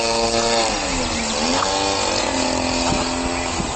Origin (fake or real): real